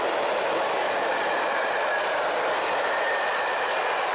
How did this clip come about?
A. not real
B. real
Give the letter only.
B